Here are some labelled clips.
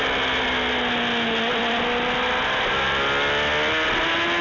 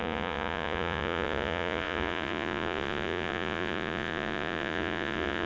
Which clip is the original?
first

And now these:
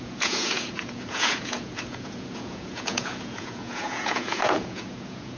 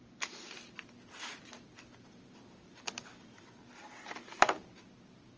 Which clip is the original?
second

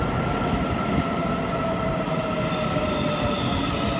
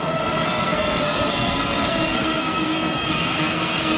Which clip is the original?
first